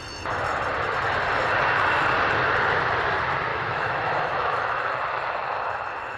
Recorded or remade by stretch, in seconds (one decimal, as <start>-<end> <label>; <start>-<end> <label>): 0.0-3.5 recorded; 3.5-4.9 remade; 4.9-6.2 recorded